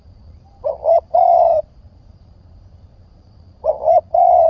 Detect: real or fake fake